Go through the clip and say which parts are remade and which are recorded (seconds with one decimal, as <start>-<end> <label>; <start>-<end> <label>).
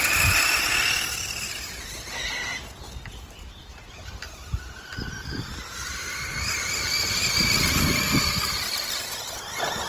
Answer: 0.0-9.9 recorded